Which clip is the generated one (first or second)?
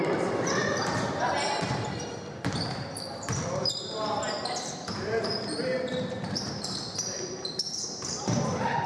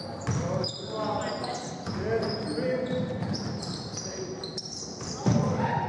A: first